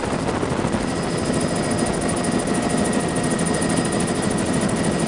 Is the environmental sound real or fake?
real